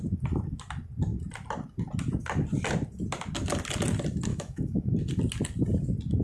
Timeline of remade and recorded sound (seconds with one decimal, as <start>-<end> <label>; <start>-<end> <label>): 0.0-4.3 recorded; 4.3-5.0 remade; 5.0-6.2 recorded